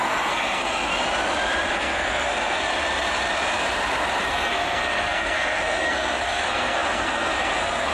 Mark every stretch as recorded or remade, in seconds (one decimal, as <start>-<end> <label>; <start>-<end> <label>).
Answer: 0.0-0.9 remade; 0.9-1.7 recorded; 1.7-2.7 remade; 2.7-4.3 recorded; 4.3-7.9 remade